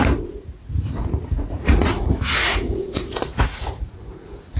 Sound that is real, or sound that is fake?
fake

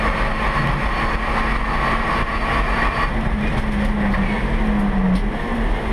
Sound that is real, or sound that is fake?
real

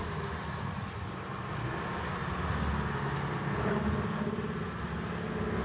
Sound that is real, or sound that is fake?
real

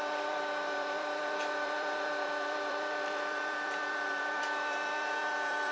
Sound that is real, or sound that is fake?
fake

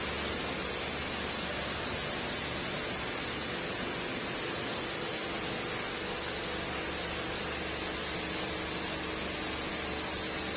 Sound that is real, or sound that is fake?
real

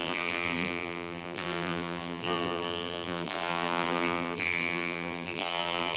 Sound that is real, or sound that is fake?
fake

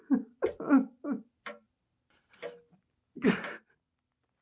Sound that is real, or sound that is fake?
real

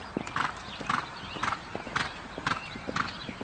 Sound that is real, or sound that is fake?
fake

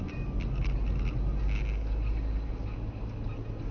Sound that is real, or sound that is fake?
real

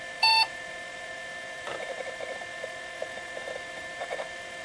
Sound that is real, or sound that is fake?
fake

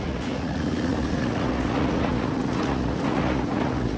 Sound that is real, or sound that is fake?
fake